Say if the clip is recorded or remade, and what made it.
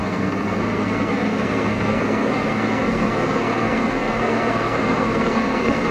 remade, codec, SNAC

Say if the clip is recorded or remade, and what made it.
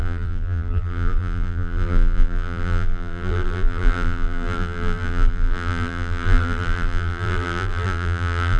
remade, vocoder, BigVGAN v2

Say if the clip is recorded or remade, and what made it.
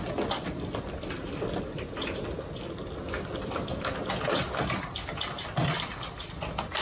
recorded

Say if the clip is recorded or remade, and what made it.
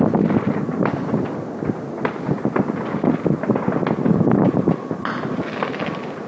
recorded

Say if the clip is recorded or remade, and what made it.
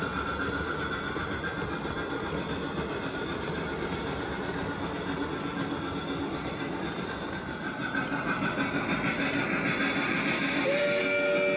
recorded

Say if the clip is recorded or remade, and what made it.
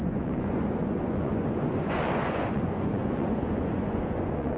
remade, vocoder, Vocos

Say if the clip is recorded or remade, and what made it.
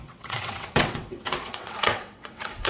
remade, vocoder, WaveNeXt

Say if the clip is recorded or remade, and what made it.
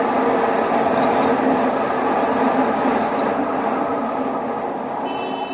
recorded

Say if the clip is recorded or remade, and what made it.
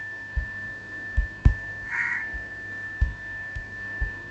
remade, codec, SNAC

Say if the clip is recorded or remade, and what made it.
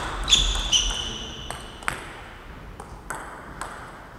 recorded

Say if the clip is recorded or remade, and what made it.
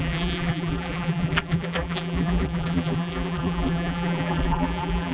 remade, vocoder, BigVGAN v2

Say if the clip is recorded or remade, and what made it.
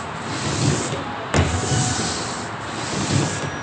recorded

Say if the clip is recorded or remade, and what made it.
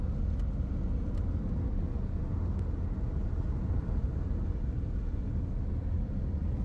recorded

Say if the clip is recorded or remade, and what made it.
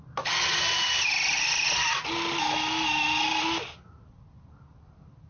recorded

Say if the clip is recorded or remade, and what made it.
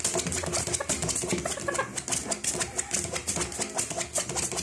recorded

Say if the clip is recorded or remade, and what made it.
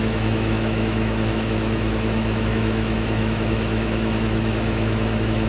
remade, autoencoder, DAC-VAE